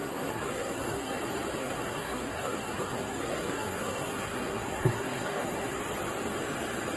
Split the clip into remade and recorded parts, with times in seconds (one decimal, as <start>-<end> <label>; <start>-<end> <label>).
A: 0.0-1.2 remade; 1.2-1.6 recorded; 1.6-5.8 remade; 5.8-7.0 recorded